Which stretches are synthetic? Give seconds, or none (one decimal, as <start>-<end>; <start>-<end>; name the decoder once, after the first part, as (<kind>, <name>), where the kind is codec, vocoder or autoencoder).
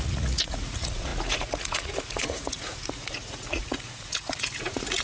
0.0-5.0 (vocoder, Vocos)